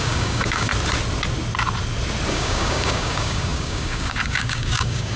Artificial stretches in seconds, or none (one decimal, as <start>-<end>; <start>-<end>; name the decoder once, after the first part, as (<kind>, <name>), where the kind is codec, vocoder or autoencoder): 0.0-0.7 (codec, DAC); 2.3-5.2